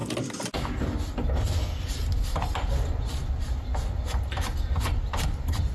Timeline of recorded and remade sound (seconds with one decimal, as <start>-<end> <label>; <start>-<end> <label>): 0.0-5.7 recorded